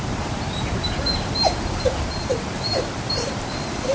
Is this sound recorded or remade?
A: remade